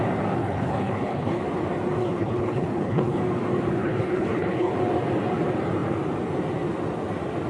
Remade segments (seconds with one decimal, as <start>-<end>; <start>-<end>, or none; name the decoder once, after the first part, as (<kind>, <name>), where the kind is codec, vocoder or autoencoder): 0.4-1.4 (codec, HILCodec); 2.0-3.2; 3.8-4.7